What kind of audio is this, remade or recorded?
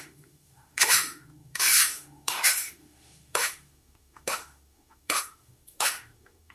remade